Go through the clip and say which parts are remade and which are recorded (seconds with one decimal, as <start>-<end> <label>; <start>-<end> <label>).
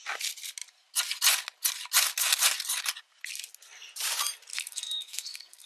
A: 0.0-4.5 recorded; 4.5-5.7 remade